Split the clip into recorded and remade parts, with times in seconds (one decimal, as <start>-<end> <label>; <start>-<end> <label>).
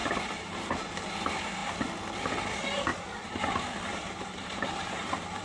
0.0-1.0 remade; 1.0-2.9 recorded; 2.9-3.4 remade; 3.4-4.0 recorded; 4.0-5.0 remade; 5.0-5.4 recorded